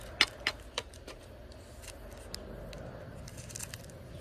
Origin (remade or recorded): recorded